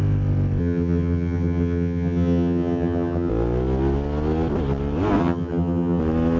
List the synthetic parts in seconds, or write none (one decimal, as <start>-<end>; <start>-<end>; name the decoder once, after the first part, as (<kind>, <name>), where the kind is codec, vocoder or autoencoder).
0.6-3.3 (vocoder, HiFi-GAN); 5.2-6.0